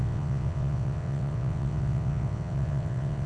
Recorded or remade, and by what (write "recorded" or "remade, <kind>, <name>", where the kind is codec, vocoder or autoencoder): remade, vocoder, WaveNeXt